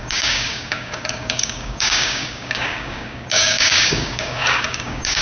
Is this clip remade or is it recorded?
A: remade